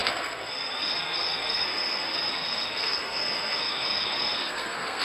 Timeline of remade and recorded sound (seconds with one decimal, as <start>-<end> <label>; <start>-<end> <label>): 0.0-5.0 remade